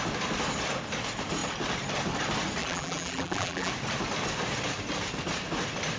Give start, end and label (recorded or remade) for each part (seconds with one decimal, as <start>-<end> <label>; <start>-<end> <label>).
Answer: 0.0-2.6 recorded; 2.6-3.7 remade; 3.7-6.0 recorded